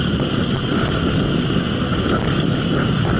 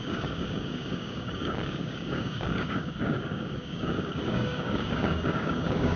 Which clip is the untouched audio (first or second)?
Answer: first